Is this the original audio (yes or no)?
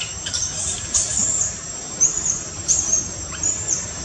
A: no